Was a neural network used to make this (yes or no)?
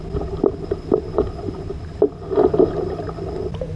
yes